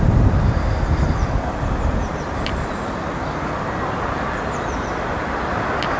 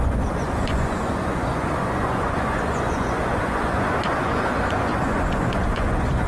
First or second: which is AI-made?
second